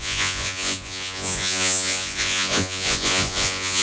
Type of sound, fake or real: fake